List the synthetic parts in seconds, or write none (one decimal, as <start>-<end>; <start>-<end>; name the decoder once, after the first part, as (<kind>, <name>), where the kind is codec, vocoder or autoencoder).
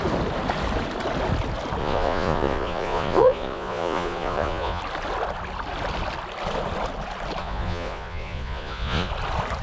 1.8-4.8 (vocoder, Vocos); 7.4-9.1